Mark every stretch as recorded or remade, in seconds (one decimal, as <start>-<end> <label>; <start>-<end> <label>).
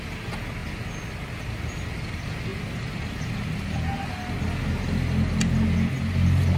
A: 0.0-6.6 recorded